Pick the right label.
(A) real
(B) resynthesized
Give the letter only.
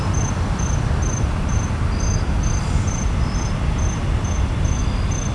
A